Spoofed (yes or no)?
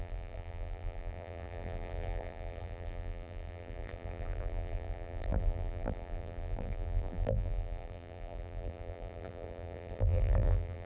yes